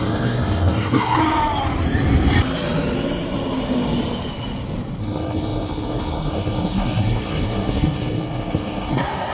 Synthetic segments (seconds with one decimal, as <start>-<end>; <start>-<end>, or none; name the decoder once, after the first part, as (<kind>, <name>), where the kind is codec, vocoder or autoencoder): 0.0-1.2 (codec, SNAC); 5.0-9.3